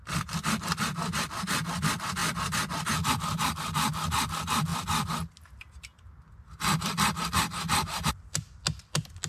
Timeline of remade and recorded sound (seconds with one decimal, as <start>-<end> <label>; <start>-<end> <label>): 0.0-9.3 recorded